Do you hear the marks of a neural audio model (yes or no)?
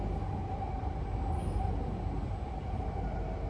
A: no